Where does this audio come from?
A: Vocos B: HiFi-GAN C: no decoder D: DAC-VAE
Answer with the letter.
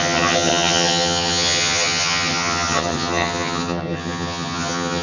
B